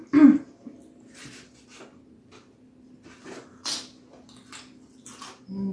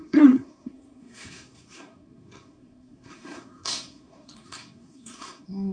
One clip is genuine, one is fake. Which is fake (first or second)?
second